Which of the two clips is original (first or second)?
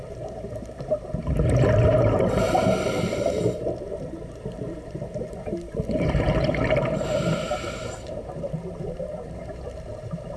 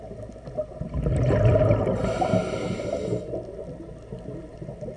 second